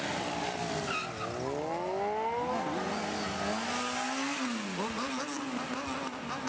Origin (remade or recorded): recorded